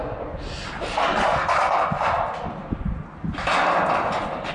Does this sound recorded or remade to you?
recorded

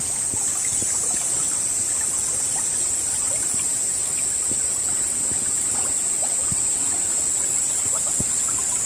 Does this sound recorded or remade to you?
recorded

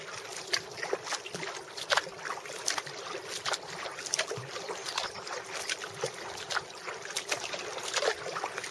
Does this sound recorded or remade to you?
recorded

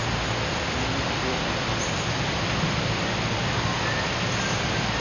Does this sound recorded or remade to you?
recorded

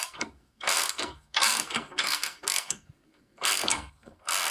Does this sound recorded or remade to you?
remade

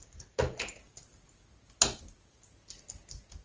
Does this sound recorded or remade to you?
recorded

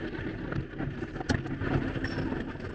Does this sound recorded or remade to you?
recorded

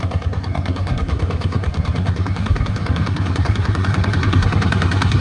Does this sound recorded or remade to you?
remade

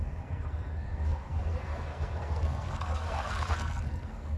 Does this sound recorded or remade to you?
remade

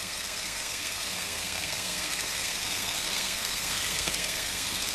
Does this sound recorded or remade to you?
remade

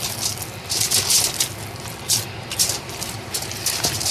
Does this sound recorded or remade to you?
recorded